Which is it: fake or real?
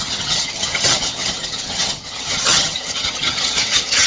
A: fake